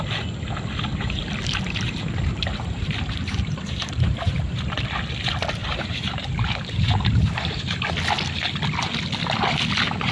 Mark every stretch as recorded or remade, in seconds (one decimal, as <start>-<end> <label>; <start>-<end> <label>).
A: 0.0-0.9 recorded; 0.9-4.6 remade; 4.6-5.6 recorded; 5.6-7.8 remade; 7.8-10.1 recorded